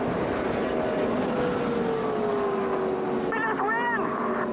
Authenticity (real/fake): real